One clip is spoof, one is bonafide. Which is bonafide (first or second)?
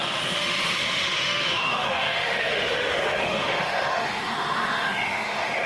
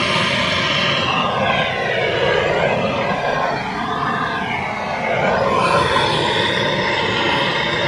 second